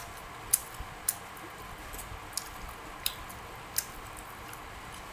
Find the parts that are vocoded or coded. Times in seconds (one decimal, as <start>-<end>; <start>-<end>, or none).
none